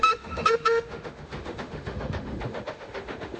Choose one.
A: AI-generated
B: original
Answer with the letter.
A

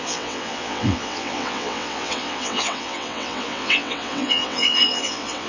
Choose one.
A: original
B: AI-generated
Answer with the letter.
B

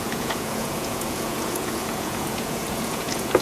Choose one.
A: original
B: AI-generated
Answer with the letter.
B